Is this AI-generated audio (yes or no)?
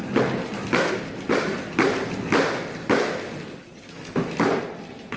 no